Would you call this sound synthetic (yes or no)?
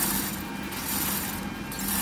no